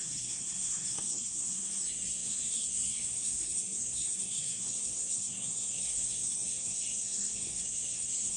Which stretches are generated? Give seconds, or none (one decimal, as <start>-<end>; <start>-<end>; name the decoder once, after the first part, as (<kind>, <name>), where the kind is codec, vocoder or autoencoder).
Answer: 0.0-8.4 (codec, SNAC)